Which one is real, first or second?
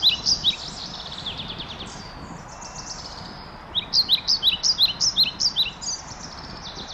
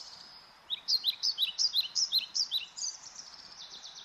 first